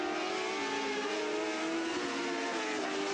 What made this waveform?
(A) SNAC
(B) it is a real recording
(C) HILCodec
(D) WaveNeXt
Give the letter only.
B